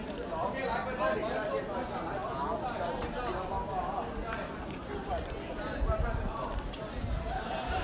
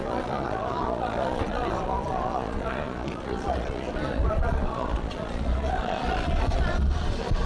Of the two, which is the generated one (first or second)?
second